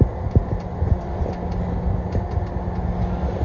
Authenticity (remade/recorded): recorded